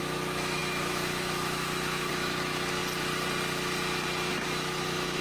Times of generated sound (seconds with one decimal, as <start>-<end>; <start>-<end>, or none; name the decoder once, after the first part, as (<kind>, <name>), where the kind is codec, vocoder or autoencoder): 0.0-2.8 (autoencoder, DAC-VAE); 4.3-5.2